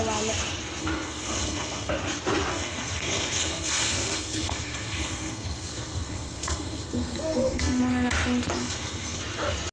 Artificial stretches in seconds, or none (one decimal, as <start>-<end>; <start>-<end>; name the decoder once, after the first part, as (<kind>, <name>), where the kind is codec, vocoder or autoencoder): 0.8-1.9 (codec, SNAC); 2.5-7.8; 8.6-9.2